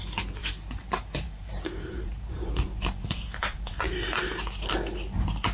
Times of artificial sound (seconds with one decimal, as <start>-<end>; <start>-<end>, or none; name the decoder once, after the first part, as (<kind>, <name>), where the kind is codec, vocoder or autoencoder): 0.4-3.7 (vocoder, BigVGAN v2)